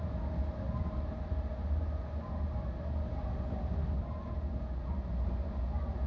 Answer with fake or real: real